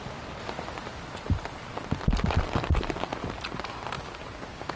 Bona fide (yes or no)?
yes